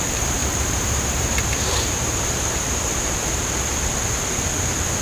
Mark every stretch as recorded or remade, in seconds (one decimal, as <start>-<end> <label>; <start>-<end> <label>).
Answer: 0.0-0.4 recorded; 0.4-3.4 remade; 3.4-5.0 recorded